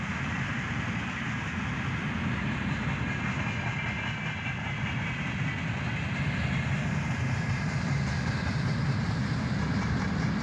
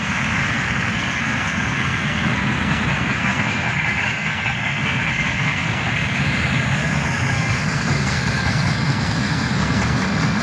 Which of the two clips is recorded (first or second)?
first